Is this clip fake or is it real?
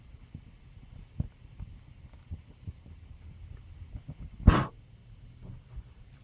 real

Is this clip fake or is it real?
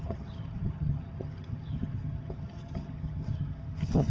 fake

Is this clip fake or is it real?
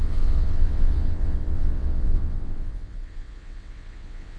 fake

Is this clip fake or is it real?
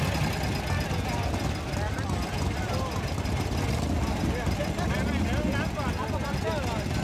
real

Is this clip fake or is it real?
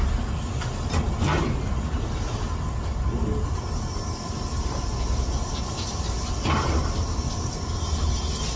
real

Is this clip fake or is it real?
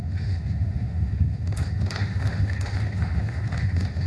fake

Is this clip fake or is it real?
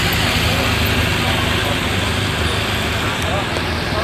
real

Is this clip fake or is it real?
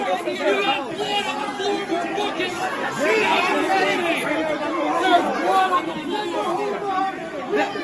real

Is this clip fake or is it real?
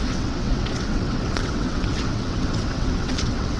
fake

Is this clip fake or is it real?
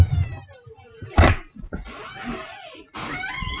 real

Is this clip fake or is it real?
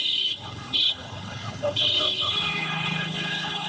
fake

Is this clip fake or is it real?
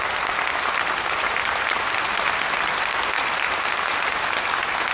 real